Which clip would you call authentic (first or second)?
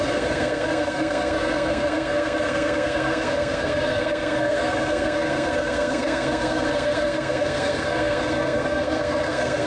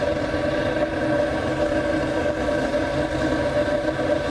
second